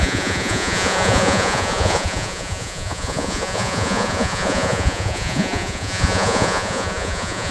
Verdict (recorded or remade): remade